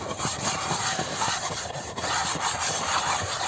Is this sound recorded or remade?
recorded